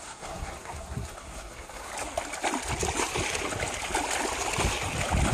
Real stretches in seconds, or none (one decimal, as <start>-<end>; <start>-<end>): 1.9-5.3